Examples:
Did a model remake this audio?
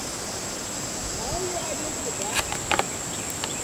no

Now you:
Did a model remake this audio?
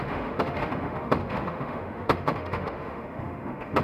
yes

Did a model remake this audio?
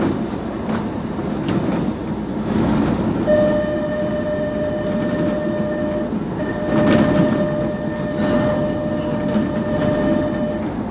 no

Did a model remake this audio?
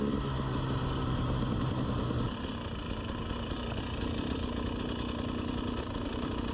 no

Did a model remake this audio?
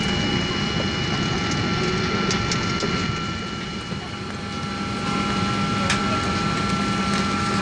no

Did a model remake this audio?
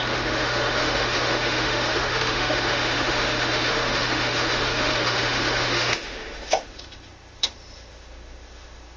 yes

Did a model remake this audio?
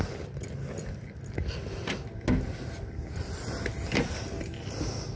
no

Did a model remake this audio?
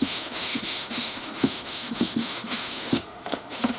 yes